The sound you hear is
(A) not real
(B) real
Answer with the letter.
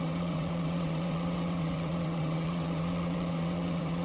A